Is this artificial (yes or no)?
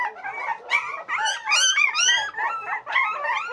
no